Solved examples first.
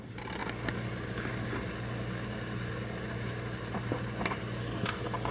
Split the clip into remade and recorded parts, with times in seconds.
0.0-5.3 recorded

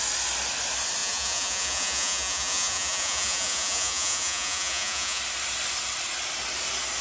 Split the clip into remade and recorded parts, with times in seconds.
0.0-1.0 recorded; 1.0-5.2 remade; 5.2-7.0 recorded

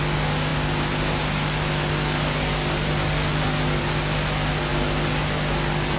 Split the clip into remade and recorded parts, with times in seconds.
0.0-6.0 recorded

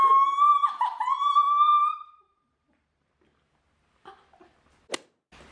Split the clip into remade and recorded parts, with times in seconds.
0.0-0.5 recorded; 0.5-3.1 remade; 3.1-5.5 recorded

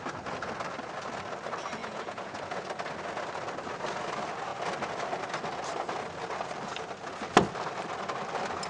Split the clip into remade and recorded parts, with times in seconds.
0.0-1.8 recorded; 1.8-2.6 remade; 2.6-8.7 recorded